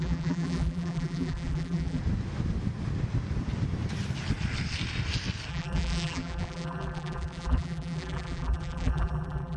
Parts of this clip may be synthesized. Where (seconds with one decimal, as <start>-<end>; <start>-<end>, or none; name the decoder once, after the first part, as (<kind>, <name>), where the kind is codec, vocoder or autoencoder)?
0.0-2.0 (vocoder, BigVGAN v2); 5.5-9.6